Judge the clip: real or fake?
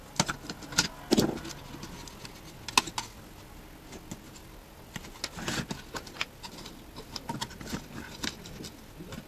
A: real